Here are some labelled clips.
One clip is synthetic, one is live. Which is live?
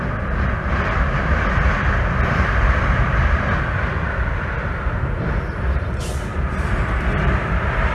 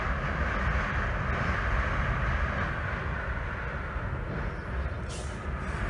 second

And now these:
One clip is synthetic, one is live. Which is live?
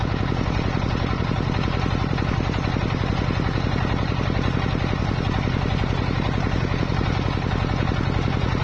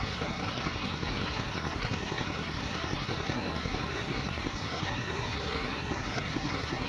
first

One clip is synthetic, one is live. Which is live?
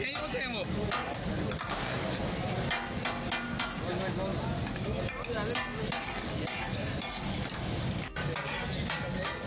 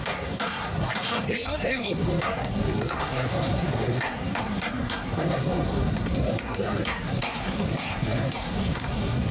first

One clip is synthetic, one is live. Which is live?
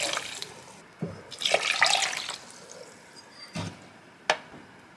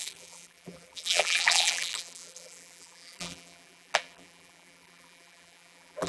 first